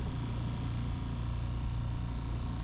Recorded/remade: recorded